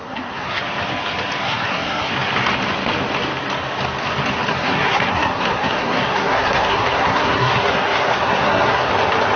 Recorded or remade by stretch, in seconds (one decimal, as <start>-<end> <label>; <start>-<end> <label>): 0.0-0.6 remade; 0.6-1.4 recorded; 1.4-2.1 remade; 2.1-4.5 recorded; 4.5-8.9 remade; 8.9-9.4 recorded